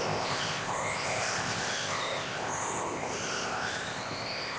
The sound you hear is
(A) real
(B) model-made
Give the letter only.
B